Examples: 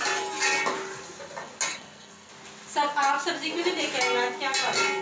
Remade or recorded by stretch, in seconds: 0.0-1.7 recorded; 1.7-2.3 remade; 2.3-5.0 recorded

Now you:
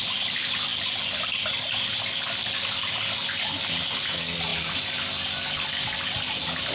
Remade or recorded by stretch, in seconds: 0.0-6.7 recorded

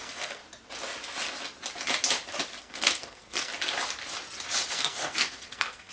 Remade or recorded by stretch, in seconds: 0.0-0.4 remade; 0.4-2.6 recorded; 2.6-3.5 remade; 3.5-4.7 recorded; 4.7-5.9 remade